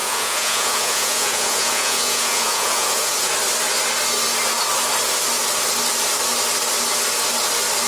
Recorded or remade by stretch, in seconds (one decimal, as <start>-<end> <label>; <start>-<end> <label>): 0.0-3.3 remade; 3.3-7.9 recorded